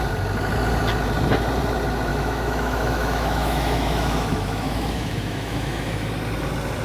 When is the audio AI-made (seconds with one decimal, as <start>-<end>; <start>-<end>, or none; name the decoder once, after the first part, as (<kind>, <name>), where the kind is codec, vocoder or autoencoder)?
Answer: 2.1-6.1 (autoencoder, DAC-VAE)